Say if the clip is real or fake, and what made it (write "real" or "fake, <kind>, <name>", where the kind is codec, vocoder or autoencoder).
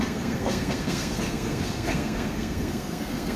fake, codec, SNAC